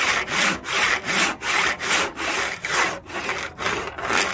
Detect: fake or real real